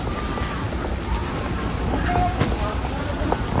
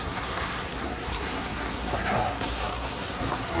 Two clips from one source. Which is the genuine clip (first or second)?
first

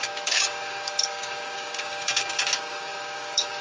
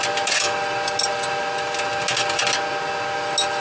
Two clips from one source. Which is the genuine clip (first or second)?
second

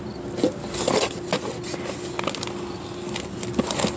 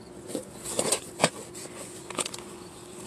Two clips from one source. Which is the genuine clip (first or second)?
first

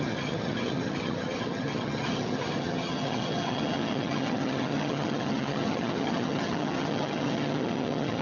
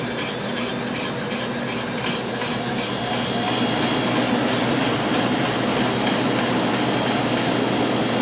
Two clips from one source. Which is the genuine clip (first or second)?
second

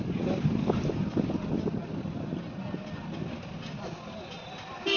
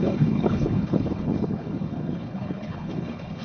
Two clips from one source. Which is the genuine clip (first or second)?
first